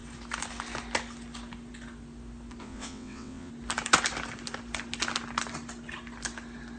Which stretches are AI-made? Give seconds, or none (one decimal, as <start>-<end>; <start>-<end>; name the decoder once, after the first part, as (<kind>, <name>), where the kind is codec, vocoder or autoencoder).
2.6-3.5 (vocoder, WaveNeXt)